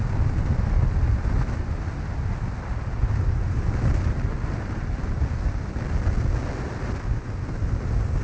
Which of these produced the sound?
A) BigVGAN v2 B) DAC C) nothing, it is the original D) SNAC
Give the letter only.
C